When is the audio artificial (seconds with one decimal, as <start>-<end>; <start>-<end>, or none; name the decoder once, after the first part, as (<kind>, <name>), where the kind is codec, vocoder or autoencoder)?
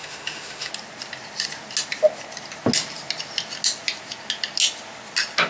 0.0-0.7 (autoencoder, DAC-VAE)